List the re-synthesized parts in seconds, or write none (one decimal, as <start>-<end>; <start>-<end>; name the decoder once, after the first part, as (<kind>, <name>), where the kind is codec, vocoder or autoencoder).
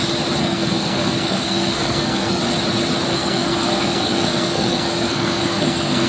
0.4-2.4 (codec, SNAC); 3.1-6.1